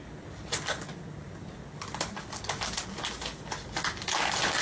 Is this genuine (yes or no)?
yes